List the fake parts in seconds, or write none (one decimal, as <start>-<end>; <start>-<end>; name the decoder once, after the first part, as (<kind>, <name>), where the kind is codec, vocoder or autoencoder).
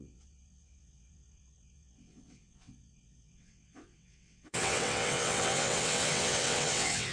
0.0-7.1 (vocoder, WaveNeXt)